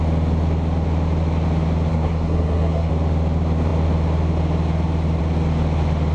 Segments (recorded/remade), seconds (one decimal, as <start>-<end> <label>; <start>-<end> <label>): 0.0-1.9 recorded; 1.9-2.9 remade; 2.9-6.1 recorded